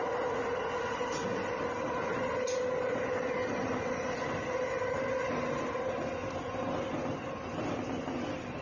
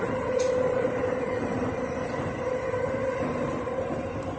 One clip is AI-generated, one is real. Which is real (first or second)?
first